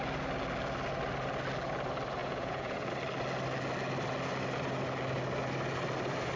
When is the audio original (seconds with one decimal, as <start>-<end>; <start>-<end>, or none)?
0.0-2.2; 2.9-6.4

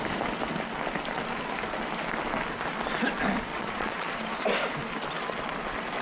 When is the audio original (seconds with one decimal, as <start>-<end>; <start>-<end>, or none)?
0.0-3.5; 4.1-6.0

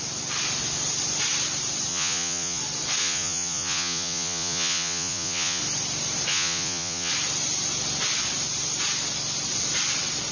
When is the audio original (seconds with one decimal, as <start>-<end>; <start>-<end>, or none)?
0.0-1.9; 2.6-3.0; 5.6-6.3; 7.1-10.3

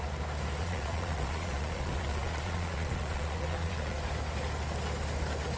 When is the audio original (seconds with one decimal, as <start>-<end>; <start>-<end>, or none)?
0.0-0.6; 4.0-5.6

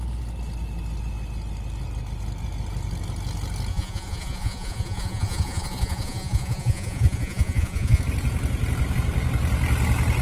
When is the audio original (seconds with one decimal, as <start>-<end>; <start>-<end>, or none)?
0.0-3.7; 8.0-10.2

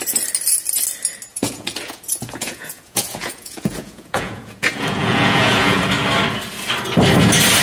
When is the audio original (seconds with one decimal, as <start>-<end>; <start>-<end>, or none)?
0.0-1.3; 5.8-7.6

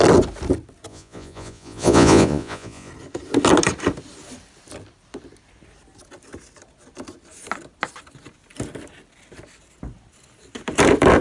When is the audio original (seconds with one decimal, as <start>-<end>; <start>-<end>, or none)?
0.0-0.9; 2.9-11.2